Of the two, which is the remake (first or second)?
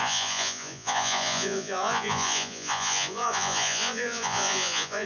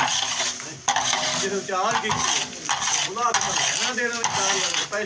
first